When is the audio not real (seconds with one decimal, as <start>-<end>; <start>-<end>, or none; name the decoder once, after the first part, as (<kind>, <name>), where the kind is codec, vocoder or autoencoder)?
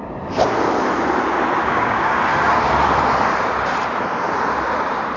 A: 1.6-2.2 (codec, DAC)